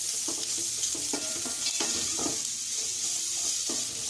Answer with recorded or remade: recorded